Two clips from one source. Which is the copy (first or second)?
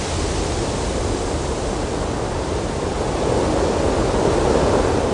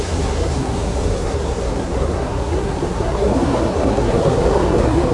second